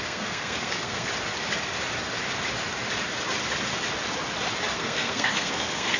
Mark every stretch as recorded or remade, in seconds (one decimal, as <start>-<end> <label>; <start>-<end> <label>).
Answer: 0.0-1.1 remade; 1.1-4.7 recorded; 4.7-6.0 remade